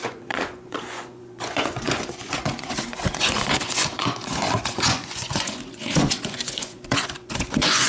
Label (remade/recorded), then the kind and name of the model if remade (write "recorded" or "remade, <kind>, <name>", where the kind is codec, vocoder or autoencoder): remade, vocoder, Vocos